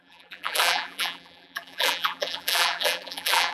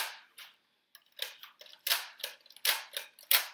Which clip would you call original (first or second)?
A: second